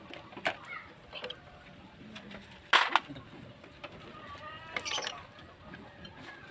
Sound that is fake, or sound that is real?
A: real